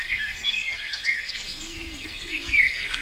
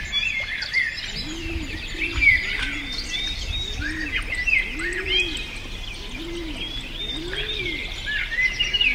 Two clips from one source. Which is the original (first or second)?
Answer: second